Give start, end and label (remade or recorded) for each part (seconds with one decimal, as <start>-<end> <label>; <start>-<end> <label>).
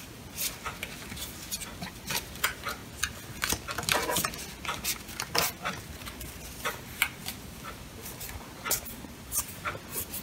0.0-2.8 remade; 2.8-5.0 recorded; 5.0-10.2 remade